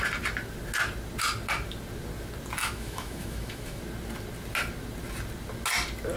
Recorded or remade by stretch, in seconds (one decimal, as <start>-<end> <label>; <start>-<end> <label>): 0.0-2.6 recorded; 2.6-3.8 remade; 3.8-6.2 recorded